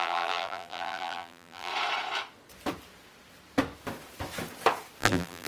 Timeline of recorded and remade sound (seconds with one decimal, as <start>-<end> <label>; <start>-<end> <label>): 0.0-1.7 remade; 1.7-5.0 recorded; 5.0-5.5 remade